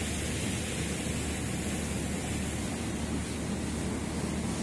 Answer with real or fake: real